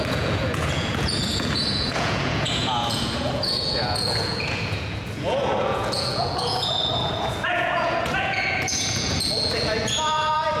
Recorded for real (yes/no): no